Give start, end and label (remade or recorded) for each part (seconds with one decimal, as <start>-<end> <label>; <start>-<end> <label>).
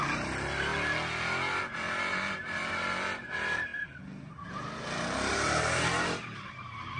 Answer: 0.0-0.7 remade; 0.7-1.6 recorded; 1.6-7.0 remade